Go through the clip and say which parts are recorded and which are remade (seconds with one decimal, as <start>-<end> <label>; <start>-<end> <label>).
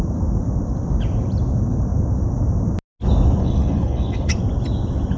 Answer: 0.0-3.4 recorded; 3.4-4.3 remade; 4.3-5.2 recorded